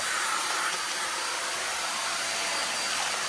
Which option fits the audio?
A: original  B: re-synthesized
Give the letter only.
A